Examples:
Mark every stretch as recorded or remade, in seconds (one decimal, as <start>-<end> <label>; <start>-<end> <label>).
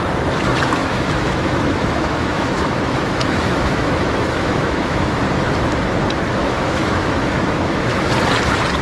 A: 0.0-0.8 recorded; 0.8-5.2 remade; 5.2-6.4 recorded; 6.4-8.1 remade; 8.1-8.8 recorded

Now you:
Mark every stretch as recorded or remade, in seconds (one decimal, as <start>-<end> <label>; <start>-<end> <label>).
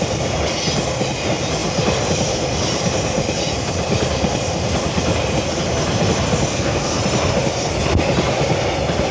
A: 0.0-6.5 recorded; 6.5-7.0 remade; 7.0-9.1 recorded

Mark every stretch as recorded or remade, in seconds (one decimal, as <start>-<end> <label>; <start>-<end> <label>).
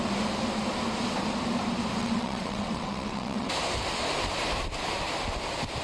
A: 0.0-2.0 recorded; 2.0-3.5 remade; 3.5-5.8 recorded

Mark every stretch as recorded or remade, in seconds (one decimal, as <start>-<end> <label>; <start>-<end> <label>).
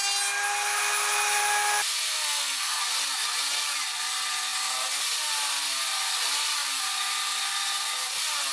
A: 0.0-2.1 recorded; 2.1-2.8 remade; 2.8-8.5 recorded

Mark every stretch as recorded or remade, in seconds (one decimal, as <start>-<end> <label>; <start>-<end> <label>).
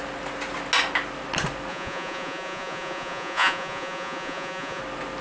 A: 0.0-1.7 recorded; 1.7-4.8 remade; 4.8-5.2 recorded